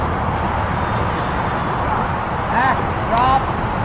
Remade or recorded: recorded